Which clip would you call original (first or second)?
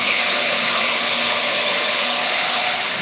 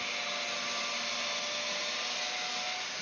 second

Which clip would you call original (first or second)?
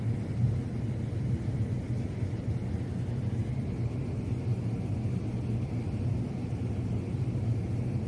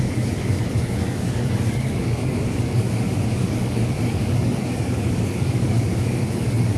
first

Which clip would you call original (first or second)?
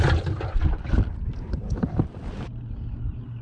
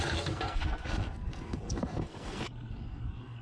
first